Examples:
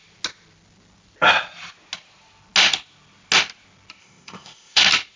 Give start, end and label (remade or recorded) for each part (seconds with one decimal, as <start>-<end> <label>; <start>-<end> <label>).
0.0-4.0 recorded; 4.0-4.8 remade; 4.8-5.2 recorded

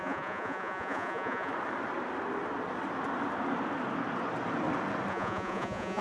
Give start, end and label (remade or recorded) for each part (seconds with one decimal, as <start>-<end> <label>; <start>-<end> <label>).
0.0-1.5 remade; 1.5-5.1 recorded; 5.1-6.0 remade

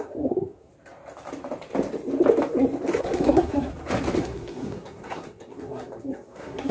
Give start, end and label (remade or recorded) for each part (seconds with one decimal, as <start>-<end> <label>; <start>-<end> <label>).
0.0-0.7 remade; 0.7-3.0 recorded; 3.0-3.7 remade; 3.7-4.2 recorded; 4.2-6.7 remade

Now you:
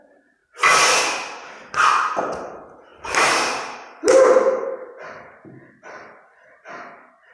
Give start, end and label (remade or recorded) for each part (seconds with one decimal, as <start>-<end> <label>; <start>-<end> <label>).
0.0-2.9 recorded; 2.9-4.9 remade; 4.9-7.3 recorded

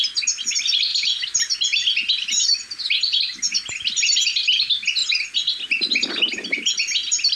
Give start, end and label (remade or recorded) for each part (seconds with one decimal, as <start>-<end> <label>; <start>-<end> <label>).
0.0-7.4 recorded

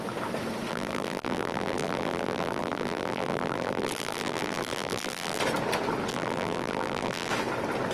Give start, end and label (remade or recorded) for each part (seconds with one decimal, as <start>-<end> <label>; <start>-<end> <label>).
0.0-0.7 recorded; 0.7-5.4 remade; 5.4-6.1 recorded; 6.1-7.3 remade; 7.3-7.9 recorded

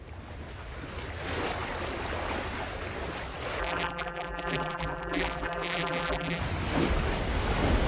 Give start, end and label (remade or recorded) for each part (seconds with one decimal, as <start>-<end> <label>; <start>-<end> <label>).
0.0-3.6 recorded; 3.6-6.4 remade; 6.4-7.9 recorded

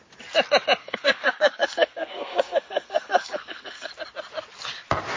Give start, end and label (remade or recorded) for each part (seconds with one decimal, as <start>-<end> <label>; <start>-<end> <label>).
0.0-0.8 recorded; 0.8-3.9 remade; 3.9-5.2 recorded